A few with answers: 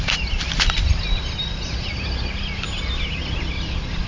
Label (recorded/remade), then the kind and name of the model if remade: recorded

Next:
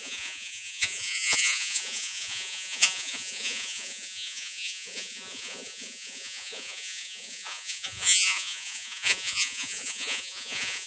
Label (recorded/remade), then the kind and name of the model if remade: remade, vocoder, Vocos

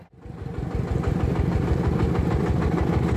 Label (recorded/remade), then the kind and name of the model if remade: recorded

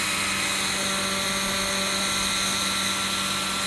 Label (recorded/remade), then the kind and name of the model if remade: recorded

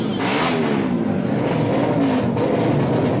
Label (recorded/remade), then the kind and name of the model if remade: recorded